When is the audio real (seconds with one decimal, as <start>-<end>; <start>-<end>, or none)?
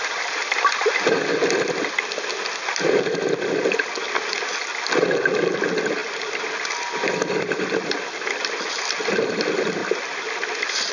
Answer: 0.0-10.9